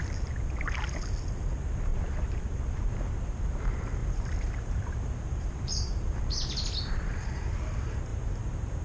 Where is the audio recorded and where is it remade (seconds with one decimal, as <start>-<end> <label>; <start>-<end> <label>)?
0.0-1.9 recorded; 1.9-3.5 remade; 3.5-4.0 recorded; 4.0-6.2 remade; 6.2-8.1 recorded; 8.1-8.8 remade